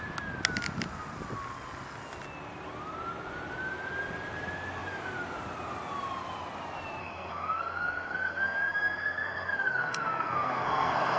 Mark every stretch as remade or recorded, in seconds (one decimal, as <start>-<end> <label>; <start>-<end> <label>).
0.0-7.0 recorded; 7.0-11.2 remade